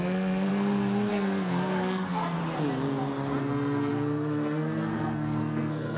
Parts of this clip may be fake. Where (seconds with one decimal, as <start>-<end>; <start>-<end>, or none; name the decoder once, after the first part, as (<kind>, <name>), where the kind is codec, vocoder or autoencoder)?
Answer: 0.0-0.5 (codec, SNAC); 1.1-2.4; 3.4-6.0